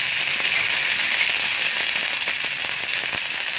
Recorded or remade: recorded